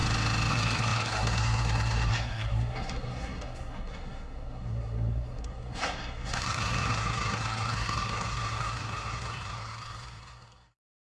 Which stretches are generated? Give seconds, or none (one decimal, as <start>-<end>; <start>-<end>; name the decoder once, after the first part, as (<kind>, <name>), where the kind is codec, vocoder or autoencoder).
0.5-11.1 (codec, SNAC)